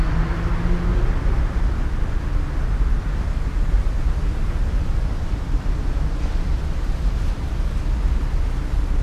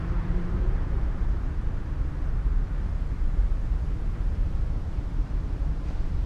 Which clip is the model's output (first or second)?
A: second